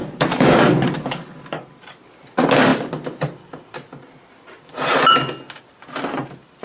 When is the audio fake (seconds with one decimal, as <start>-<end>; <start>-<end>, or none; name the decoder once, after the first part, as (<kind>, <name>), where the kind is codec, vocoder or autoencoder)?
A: 0.0-1.8 (codec, DAC)